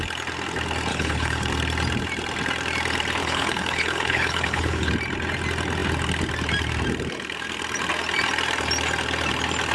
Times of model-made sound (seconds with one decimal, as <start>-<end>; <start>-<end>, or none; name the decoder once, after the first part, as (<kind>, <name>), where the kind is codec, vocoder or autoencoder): 0.9-1.5 (codec, HILCodec); 3.2-4.9